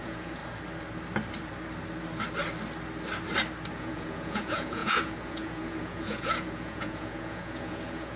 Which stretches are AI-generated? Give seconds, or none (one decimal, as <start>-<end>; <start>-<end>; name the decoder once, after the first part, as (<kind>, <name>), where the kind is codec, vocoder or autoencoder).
0.0-0.4 (vocoder, Vocos); 3.8-8.2